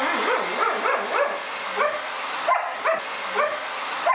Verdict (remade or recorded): recorded